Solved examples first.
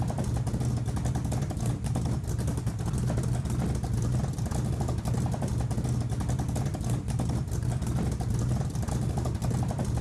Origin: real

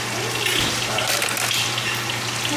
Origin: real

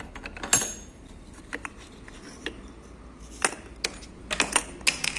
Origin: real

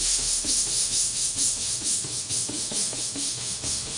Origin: fake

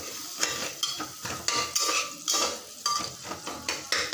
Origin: real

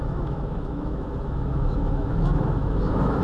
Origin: fake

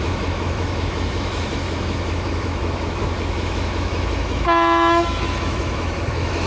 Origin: fake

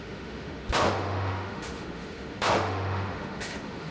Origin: fake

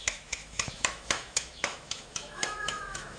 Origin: fake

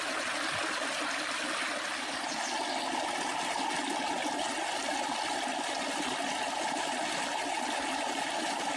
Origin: real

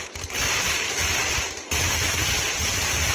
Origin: real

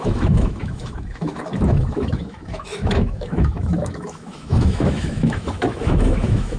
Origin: fake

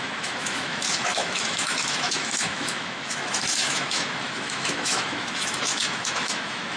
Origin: fake